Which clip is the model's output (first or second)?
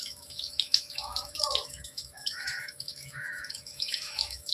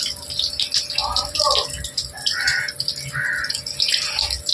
first